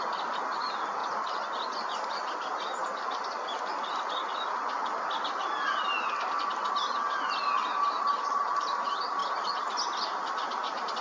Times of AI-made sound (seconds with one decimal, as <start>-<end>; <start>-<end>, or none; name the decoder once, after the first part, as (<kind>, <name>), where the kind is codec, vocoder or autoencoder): none